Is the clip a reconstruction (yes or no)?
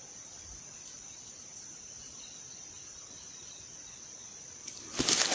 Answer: no